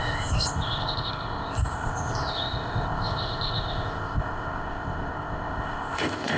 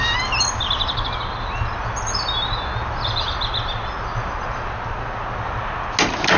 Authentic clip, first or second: second